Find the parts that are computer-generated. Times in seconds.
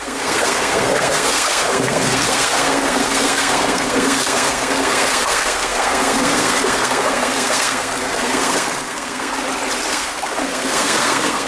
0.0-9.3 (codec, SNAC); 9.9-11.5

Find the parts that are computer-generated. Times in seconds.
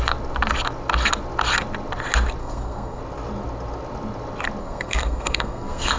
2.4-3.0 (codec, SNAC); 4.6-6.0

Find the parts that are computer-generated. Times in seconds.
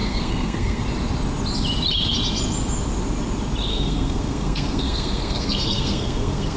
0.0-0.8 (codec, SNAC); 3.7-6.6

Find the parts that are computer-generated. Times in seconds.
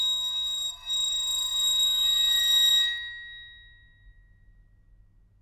none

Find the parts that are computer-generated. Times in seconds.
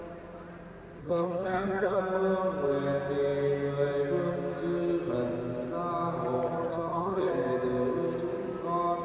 1.0-2.0 (codec, SNAC); 6.7-7.3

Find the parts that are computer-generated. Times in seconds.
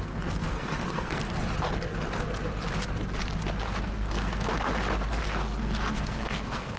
0.0-1.4 (codec, SNAC); 3.8-4.5; 5.2-6.8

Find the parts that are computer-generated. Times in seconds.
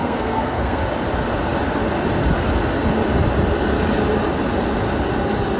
0.0-0.8 (codec, SNAC)